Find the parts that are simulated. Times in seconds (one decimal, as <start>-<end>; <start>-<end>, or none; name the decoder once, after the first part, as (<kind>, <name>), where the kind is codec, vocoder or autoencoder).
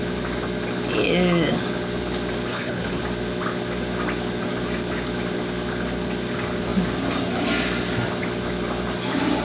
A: 2.5-3.0 (codec, HILCodec)